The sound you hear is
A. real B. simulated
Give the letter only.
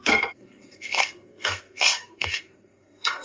B